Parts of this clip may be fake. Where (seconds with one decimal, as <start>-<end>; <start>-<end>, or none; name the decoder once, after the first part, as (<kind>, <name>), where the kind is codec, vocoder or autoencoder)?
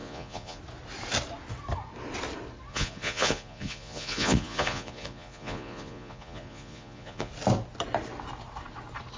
0.0-0.6 (vocoder, Vocos); 2.7-7.3